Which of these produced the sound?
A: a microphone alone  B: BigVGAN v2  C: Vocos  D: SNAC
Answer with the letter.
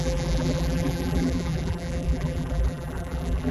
B